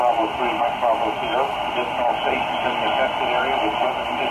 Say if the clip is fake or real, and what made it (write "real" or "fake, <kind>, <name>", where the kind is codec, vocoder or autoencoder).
real